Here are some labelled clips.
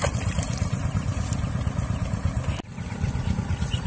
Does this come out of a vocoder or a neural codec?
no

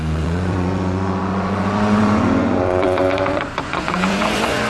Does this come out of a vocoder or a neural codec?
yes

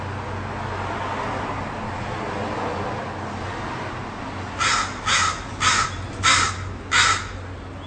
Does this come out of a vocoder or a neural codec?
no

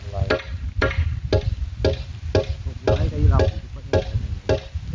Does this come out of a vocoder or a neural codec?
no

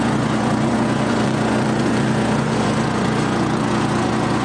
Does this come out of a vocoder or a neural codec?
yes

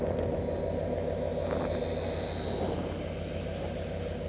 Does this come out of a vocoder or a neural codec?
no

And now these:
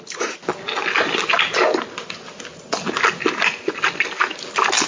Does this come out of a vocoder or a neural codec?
no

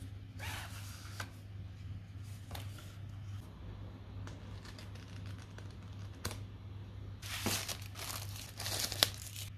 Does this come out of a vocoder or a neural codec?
no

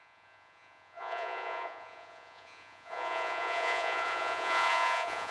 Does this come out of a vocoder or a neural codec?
yes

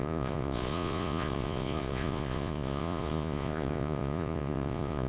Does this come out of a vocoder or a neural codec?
yes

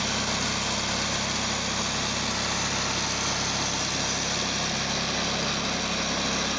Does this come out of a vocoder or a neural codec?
no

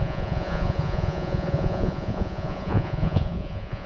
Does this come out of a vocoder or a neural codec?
yes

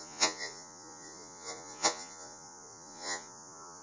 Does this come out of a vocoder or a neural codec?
yes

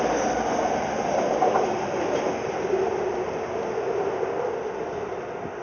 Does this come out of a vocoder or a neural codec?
no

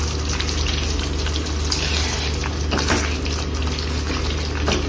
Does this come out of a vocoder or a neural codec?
no